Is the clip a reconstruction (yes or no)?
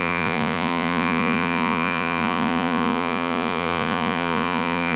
yes